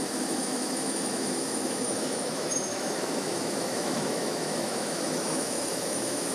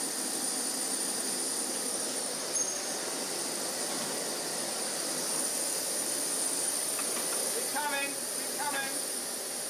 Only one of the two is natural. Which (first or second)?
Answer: second